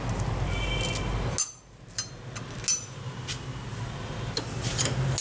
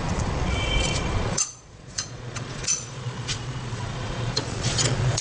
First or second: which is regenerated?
second